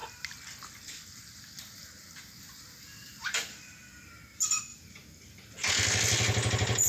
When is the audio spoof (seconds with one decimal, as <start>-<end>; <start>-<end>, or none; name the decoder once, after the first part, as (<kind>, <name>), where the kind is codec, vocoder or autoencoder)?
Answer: 0.0-4.1 (vocoder, BigVGAN v2); 4.7-6.9